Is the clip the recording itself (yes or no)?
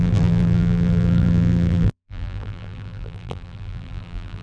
no